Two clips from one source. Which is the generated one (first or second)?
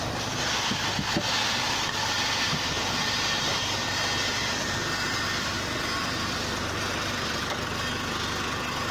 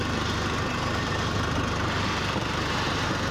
second